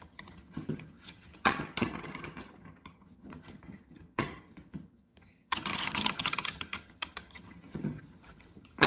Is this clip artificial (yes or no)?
yes